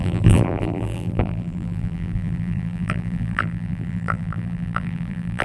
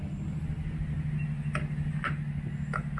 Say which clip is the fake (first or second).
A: first